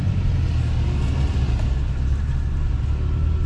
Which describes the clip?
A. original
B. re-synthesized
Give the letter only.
A